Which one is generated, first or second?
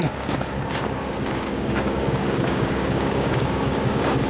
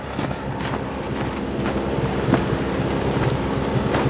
first